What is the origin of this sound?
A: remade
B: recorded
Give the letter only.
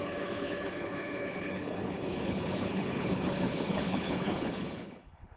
A